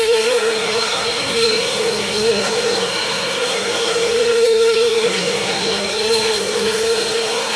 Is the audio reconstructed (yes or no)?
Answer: yes